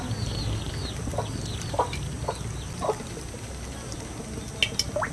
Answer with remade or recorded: recorded